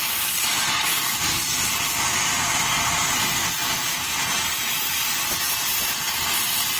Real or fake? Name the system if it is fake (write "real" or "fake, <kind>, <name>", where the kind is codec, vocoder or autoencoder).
real